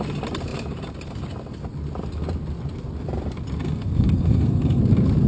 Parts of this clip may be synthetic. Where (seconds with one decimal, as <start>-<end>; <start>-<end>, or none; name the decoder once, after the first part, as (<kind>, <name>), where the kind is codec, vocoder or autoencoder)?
3.6-4.8 (codec, SNAC)